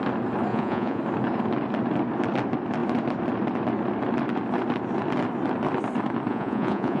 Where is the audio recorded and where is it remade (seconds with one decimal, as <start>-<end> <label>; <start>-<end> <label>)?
0.0-0.5 recorded; 0.5-1.0 remade; 1.0-6.3 recorded; 6.3-7.0 remade